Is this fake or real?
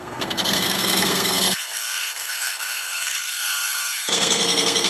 fake